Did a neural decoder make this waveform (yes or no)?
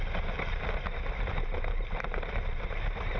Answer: yes